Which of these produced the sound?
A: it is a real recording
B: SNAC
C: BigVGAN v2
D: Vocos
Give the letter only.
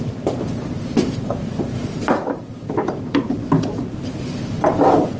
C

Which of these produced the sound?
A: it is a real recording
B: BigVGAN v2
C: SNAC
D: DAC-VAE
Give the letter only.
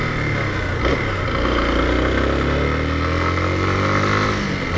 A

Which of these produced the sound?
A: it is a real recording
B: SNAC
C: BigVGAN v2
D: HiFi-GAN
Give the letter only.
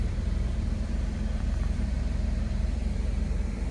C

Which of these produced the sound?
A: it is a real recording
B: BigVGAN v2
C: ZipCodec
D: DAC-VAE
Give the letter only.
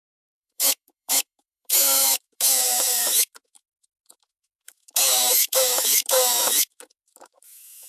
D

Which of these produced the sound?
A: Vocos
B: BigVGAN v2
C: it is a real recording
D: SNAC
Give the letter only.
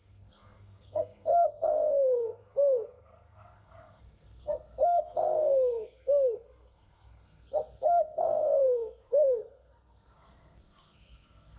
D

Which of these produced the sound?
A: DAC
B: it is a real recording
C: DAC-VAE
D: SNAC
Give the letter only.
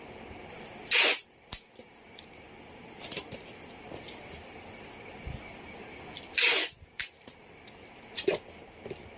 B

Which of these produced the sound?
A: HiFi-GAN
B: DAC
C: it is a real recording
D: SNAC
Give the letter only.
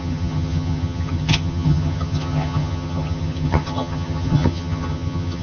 A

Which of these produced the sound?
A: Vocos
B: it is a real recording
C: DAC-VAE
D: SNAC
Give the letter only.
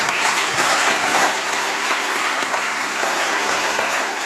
D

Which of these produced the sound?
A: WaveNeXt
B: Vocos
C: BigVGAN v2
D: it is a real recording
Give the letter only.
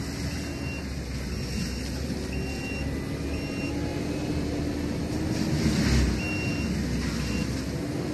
D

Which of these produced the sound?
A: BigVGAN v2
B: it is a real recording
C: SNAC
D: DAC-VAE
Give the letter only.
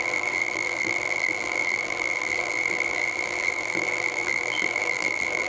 A